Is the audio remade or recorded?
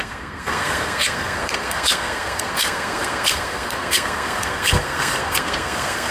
remade